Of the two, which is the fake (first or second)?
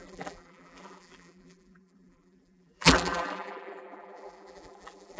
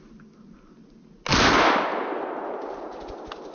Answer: first